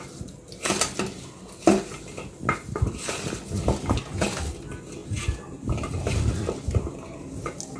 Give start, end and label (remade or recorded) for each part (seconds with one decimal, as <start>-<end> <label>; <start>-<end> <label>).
0.0-7.8 recorded